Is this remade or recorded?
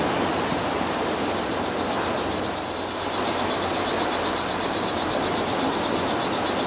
recorded